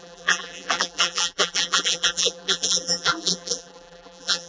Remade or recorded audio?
remade